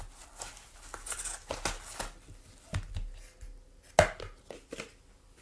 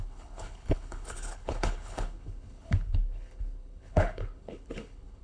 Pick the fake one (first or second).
second